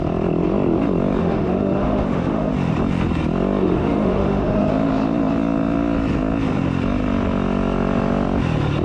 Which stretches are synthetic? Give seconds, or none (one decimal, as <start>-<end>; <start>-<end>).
1.2-2.5; 3.6-4.7